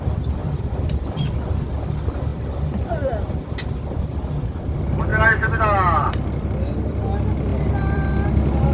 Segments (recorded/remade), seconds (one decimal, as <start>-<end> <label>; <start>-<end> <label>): 0.0-0.4 recorded; 0.4-1.4 remade; 1.4-2.3 recorded; 2.3-3.7 remade; 3.7-5.1 recorded; 5.1-7.0 remade; 7.0-7.5 recorded; 7.5-8.1 remade; 8.1-8.7 recorded